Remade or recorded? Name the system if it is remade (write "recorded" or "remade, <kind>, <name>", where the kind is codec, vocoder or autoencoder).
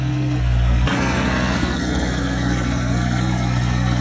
remade, codec, SNAC